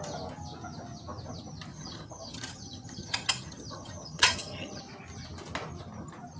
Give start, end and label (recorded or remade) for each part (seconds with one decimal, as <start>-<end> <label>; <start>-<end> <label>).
0.0-1.7 recorded; 1.7-4.8 remade; 4.8-6.4 recorded